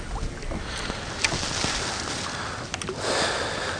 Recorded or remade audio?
recorded